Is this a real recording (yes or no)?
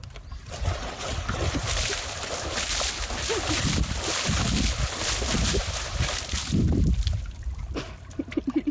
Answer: yes